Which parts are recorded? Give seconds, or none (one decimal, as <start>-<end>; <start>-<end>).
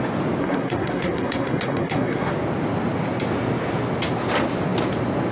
0.0-0.4; 2.3-5.3